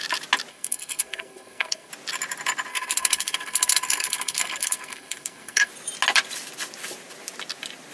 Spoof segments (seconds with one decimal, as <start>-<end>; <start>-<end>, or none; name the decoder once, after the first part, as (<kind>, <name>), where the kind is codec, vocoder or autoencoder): 0.5-1.9 (codec, SNAC); 2.7-5.7

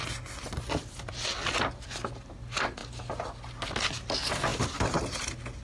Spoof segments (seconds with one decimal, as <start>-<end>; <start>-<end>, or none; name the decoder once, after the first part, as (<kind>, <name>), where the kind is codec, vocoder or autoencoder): none

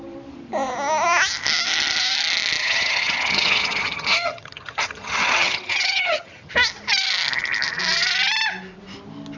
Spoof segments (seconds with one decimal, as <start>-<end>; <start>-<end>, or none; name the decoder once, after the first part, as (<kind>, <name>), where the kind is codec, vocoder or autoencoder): 2.6-6.5 (vocoder, HiFi-GAN)

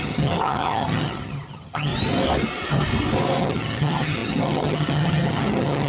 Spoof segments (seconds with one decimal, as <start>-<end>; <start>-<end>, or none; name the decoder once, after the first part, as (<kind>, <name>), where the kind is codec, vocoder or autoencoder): 0.0-1.9 (vocoder, HiFi-GAN); 3.4-5.9

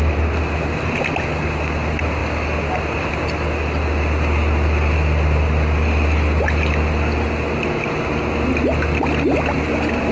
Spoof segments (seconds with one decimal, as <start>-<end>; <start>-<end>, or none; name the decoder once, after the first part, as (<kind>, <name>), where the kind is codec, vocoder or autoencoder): none

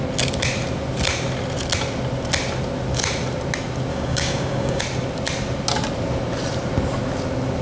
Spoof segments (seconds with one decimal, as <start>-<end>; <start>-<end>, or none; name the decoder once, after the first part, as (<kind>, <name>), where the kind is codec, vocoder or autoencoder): 3.9-4.8 (codec, DAC)

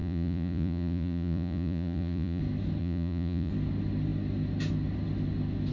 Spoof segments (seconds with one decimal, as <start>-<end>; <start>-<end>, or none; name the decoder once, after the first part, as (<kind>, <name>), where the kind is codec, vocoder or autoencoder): 0.0-2.4 (vocoder, Vocos); 2.8-3.5